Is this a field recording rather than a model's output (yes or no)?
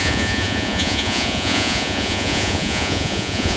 no